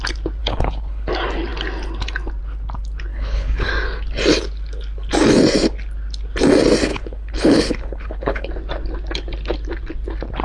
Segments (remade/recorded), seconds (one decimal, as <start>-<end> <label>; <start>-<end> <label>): 0.0-0.4 recorded; 0.4-1.1 remade; 1.1-3.1 recorded; 3.1-3.7 remade; 3.7-6.9 recorded; 6.9-8.5 remade; 8.5-10.4 recorded

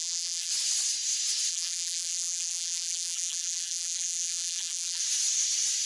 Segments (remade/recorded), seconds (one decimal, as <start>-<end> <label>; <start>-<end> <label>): 0.0-0.5 remade; 0.5-1.5 recorded; 1.5-5.0 remade; 5.0-5.9 recorded

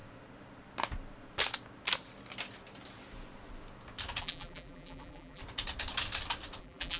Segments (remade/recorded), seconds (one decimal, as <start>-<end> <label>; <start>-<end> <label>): 0.0-4.2 recorded; 4.2-5.4 remade; 5.4-6.6 recorded; 6.6-7.0 remade

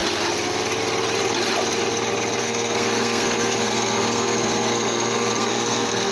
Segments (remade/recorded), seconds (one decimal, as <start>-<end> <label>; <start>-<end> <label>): 0.0-2.4 recorded; 2.4-6.1 remade

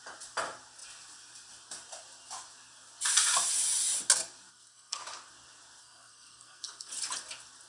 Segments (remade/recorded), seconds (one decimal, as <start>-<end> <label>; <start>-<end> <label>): 0.0-4.5 recorded; 4.5-5.0 remade; 5.0-5.8 recorded; 5.8-6.9 remade; 6.9-7.7 recorded

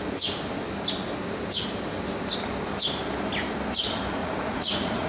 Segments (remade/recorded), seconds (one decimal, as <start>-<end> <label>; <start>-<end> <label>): 0.0-4.2 recorded; 4.2-5.1 remade

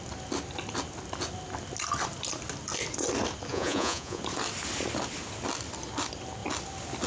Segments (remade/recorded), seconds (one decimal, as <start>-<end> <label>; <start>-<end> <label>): 0.0-3.5 recorded; 3.5-4.2 remade; 4.2-7.1 recorded